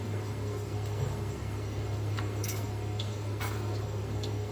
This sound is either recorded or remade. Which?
remade